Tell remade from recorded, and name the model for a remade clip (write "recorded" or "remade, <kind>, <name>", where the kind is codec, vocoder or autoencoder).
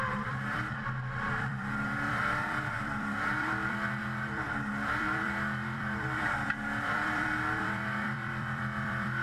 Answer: remade, vocoder, BigVGAN v2